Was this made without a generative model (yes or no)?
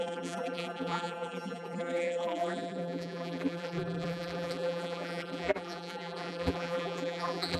no